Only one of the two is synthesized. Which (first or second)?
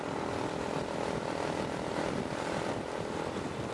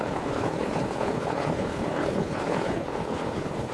second